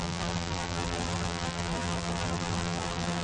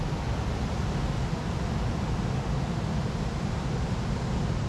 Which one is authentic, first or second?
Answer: second